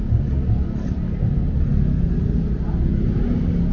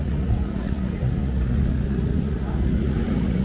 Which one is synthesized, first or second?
second